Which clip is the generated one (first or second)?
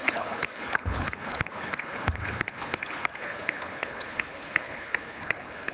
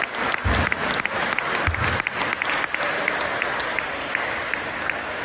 first